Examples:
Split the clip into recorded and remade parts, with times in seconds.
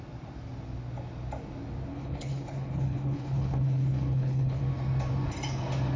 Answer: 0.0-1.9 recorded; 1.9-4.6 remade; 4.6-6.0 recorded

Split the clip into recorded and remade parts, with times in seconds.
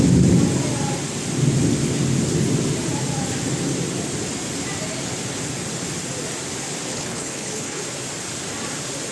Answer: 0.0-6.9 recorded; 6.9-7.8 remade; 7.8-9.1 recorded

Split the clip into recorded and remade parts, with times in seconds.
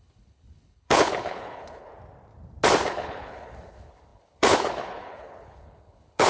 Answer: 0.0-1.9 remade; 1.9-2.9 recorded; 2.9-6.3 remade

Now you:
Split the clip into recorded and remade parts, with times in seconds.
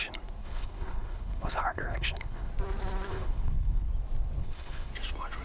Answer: 0.0-0.4 recorded; 0.4-2.5 remade; 2.5-3.1 recorded; 3.1-3.9 remade; 3.9-4.4 recorded; 4.4-4.9 remade; 4.9-5.4 recorded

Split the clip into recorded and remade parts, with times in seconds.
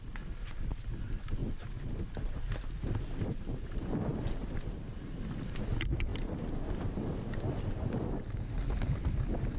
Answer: 0.0-9.6 recorded